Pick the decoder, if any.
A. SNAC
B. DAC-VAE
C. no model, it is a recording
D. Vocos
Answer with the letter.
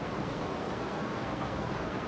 A